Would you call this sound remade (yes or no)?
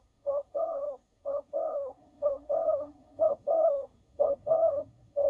yes